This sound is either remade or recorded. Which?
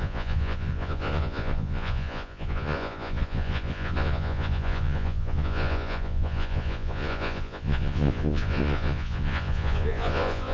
remade